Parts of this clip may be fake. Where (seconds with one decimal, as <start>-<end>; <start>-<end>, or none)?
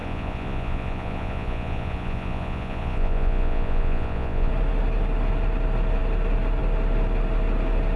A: 0.0-4.5